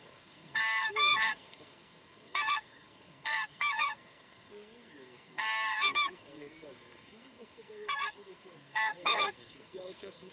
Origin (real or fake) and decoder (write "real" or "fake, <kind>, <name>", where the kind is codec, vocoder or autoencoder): fake, codec, SNAC